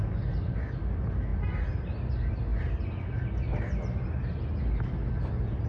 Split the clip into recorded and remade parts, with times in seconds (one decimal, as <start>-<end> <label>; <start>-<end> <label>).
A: 0.0-1.3 recorded; 1.3-2.1 remade; 2.1-5.7 recorded